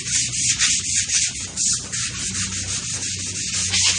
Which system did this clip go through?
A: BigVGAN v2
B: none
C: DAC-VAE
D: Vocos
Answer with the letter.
B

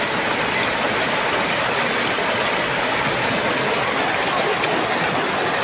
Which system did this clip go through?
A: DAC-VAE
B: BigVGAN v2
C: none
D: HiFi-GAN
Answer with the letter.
C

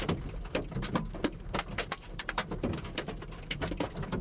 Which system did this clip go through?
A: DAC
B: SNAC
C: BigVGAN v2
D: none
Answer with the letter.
C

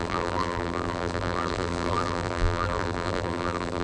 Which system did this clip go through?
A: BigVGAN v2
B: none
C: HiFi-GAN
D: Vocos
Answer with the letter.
A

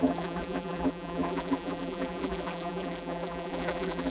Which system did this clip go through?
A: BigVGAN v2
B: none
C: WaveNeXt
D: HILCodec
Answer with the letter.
A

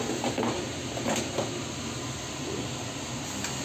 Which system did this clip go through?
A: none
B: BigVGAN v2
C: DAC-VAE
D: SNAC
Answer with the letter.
A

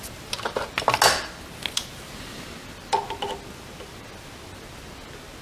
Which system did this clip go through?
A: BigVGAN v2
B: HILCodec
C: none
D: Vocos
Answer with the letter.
C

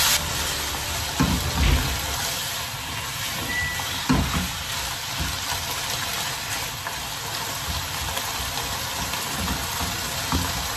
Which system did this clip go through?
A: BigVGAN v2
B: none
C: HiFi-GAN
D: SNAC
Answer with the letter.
B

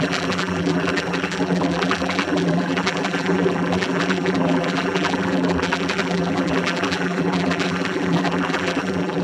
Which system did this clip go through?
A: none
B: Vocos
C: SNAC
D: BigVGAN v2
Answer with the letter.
D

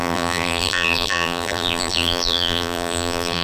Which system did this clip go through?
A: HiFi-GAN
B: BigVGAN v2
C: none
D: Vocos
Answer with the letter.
B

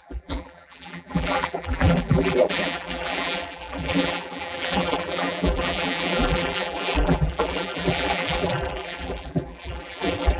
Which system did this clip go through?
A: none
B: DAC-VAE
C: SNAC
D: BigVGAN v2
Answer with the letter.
D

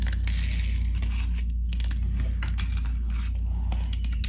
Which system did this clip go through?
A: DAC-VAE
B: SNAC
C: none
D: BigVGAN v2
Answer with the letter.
C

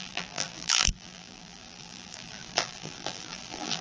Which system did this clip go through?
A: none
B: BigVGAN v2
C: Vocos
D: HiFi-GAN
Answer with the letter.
B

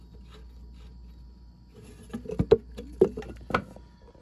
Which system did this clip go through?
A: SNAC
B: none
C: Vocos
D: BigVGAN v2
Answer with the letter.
B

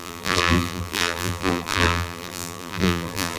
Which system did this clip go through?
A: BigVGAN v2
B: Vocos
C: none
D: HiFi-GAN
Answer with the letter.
A